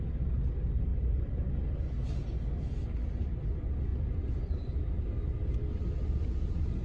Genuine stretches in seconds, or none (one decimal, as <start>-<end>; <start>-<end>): 0.0-6.8